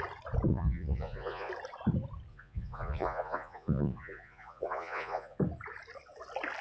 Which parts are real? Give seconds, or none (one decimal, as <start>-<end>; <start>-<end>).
0.0-0.5; 1.5-2.3; 5.4-6.6